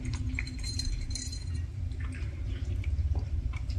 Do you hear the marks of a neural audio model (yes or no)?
yes